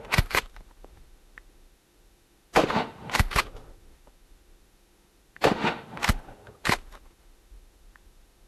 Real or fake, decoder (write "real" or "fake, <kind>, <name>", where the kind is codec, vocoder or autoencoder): fake, autoencoder, DAC-VAE